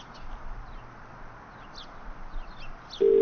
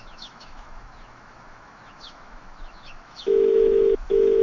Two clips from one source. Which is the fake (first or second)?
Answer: second